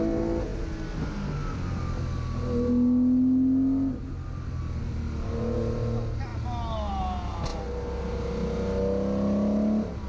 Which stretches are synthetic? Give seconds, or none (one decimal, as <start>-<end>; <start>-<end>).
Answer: none